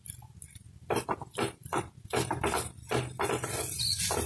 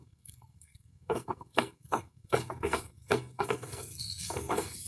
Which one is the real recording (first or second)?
first